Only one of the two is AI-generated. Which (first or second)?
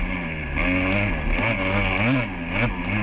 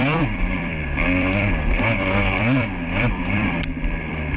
second